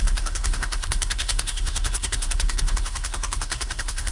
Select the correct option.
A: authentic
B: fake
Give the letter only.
B